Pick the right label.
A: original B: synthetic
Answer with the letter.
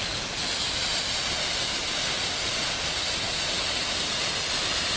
B